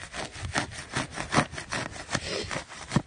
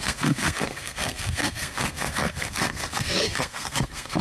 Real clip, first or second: first